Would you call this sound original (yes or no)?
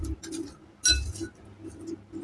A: yes